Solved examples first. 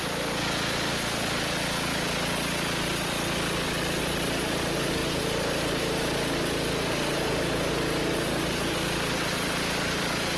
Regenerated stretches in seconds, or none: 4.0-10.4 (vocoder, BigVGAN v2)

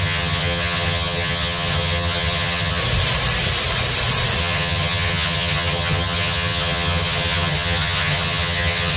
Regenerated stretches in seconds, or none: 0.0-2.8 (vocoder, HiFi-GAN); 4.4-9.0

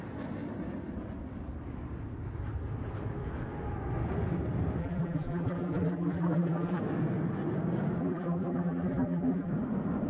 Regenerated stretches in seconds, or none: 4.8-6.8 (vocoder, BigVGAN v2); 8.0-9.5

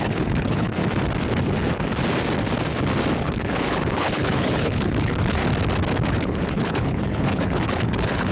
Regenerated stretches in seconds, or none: 0.0-0.8 (codec, HILCodec); 3.2-5.4; 6.1-8.3

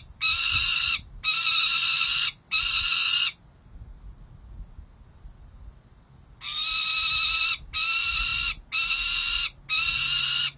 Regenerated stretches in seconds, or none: 0.0-3.0 (vocoder, BigVGAN v2); 5.1-8.3